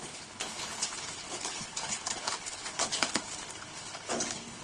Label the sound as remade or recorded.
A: remade